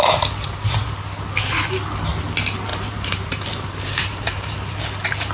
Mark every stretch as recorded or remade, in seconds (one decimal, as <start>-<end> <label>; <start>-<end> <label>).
0.0-2.7 recorded; 2.7-4.8 remade; 4.8-5.3 recorded